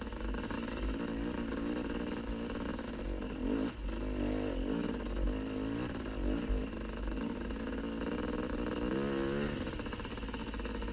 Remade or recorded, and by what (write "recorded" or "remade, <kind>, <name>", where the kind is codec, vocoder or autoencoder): recorded